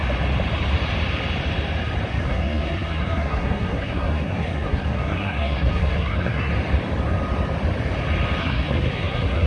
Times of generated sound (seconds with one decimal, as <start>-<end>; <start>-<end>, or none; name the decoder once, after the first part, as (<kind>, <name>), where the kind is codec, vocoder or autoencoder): 2.1-6.5 (codec, SNAC); 8.4-9.5